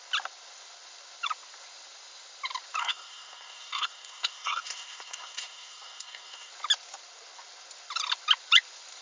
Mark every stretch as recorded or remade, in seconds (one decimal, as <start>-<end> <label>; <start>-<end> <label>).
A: 0.0-2.8 recorded; 2.8-6.5 remade; 6.5-9.0 recorded